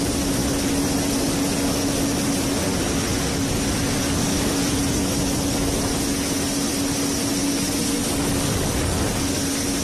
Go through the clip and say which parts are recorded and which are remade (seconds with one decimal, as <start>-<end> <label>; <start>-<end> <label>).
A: 0.0-4.3 recorded; 4.3-5.0 remade; 5.0-9.8 recorded